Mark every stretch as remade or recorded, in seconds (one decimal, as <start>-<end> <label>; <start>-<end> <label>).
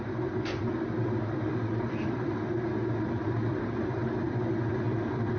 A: 0.0-4.0 remade; 4.0-4.7 recorded; 4.7-5.4 remade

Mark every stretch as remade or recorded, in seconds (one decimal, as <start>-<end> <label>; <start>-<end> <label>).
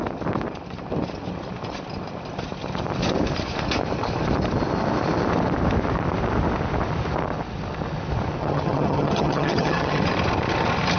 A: 0.0-8.4 recorded; 8.4-10.0 remade; 10.0-11.0 recorded